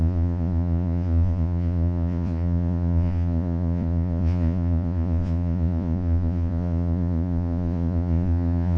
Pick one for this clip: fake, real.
fake